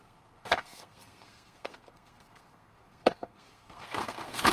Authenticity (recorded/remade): remade